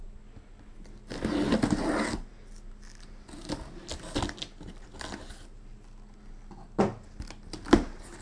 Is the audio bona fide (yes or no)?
yes